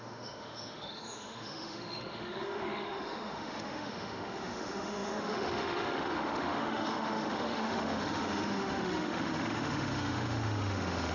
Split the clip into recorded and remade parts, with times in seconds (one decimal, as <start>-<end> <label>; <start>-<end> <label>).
0.0-11.1 remade